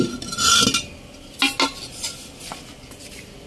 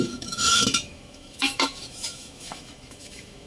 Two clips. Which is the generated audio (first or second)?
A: second